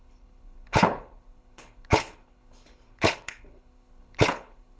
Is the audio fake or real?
fake